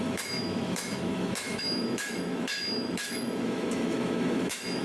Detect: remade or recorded remade